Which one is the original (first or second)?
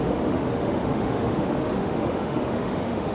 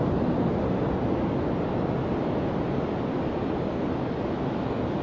second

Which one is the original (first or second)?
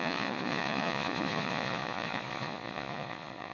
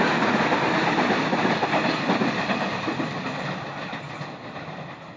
second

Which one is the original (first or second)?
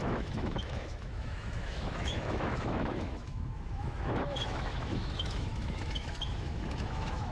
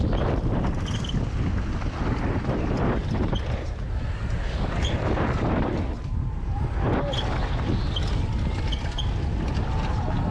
second